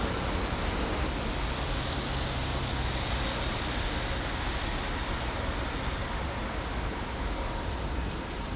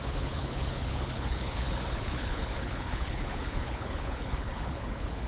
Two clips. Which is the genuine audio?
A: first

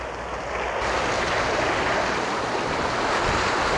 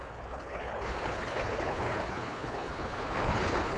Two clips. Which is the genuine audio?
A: first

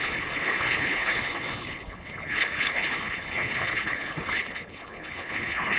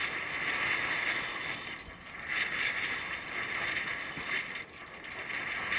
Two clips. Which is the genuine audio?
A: second